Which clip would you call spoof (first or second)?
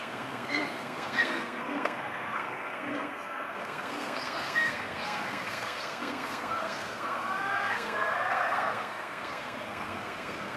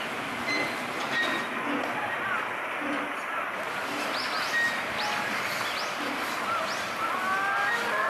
first